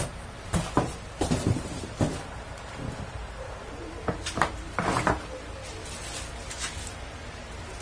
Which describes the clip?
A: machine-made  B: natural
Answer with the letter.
B